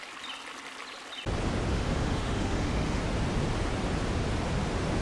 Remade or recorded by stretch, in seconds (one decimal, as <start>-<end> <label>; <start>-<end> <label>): 0.0-1.7 recorded; 1.7-3.0 remade; 3.0-5.0 recorded